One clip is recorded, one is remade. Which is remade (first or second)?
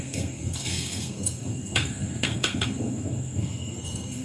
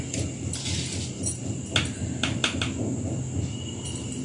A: first